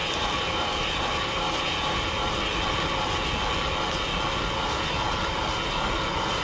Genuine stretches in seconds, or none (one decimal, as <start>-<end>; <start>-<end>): 2.3-6.4